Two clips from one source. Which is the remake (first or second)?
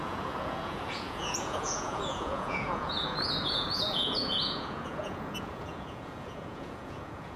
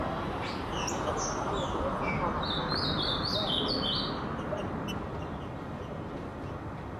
first